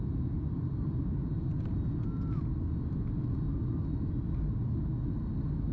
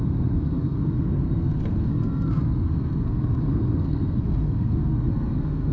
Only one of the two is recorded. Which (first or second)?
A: first